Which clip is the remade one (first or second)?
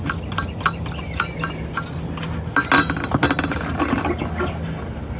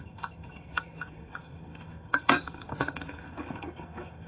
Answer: second